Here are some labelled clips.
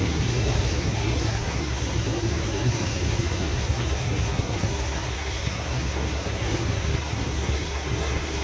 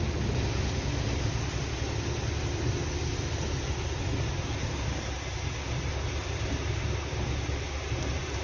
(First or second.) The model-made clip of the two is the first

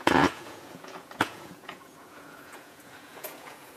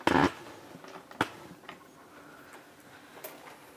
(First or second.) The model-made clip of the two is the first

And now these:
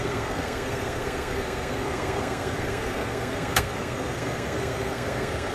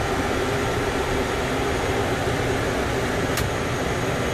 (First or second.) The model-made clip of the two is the first